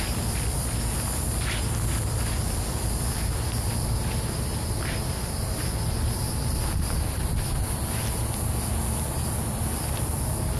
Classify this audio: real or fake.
fake